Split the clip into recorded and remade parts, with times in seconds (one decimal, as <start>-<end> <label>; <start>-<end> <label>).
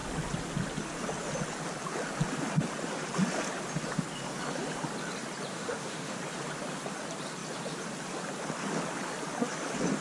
0.0-5.5 recorded; 5.5-6.2 remade; 6.2-10.0 recorded